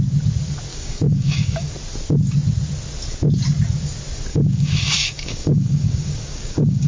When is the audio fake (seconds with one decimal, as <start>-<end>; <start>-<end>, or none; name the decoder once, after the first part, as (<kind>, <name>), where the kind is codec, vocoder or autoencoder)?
0.7-1.7 (codec, DAC); 4.3-6.9

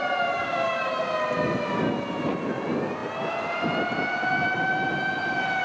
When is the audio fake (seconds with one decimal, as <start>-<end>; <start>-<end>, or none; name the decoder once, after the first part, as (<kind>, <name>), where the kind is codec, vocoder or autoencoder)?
0.4-0.9 (codec, DAC)

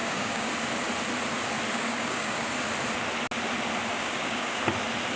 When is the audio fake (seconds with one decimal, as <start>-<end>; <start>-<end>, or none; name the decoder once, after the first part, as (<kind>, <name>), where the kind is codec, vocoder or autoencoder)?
0.0-0.5 (codec, DAC); 1.7-2.5; 3.9-4.6

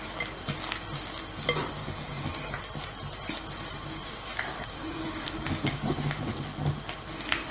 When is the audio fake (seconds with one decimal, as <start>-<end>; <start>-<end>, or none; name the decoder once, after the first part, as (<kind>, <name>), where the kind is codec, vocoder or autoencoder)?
1.8-2.6 (codec, DAC); 4.5-5.9

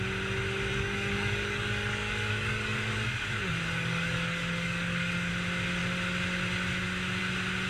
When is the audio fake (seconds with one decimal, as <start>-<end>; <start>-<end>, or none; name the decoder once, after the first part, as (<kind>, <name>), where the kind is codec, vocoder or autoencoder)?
0.7-5.3 (codec, DAC)

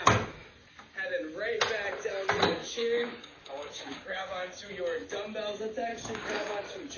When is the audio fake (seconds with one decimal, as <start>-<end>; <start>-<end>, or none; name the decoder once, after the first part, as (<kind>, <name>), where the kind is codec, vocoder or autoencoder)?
2.6-4.7 (codec, DAC); 5.9-6.6

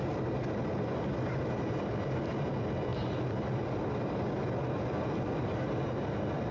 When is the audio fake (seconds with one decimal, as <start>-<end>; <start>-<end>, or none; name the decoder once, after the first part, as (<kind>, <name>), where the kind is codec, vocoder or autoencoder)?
none

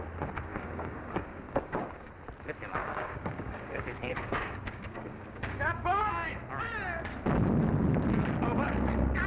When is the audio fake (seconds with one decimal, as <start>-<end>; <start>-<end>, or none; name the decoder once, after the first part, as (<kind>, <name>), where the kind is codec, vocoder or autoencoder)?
0.5-2.1 (codec, DAC); 2.8-6.0